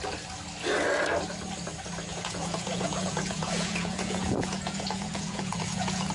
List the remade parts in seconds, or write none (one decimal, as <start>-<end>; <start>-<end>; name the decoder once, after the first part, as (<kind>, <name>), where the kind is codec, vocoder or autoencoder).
2.1-6.1 (vocoder, Vocos)